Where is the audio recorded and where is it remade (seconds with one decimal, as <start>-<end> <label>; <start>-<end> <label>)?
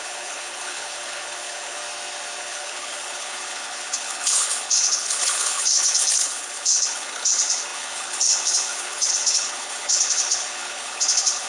0.0-1.8 remade; 1.8-2.4 recorded; 2.4-11.5 remade